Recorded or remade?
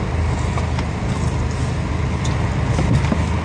recorded